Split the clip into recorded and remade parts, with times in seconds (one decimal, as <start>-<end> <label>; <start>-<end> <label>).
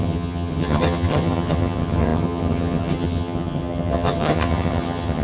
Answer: 0.0-5.2 remade